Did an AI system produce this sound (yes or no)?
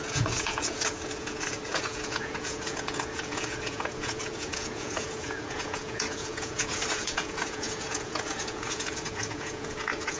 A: yes